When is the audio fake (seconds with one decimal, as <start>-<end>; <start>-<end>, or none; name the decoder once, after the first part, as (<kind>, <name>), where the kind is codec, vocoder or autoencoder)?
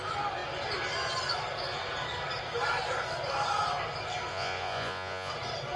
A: 4.3-5.3 (vocoder, Vocos)